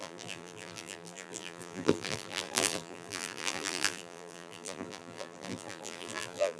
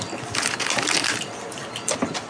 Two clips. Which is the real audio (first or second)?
second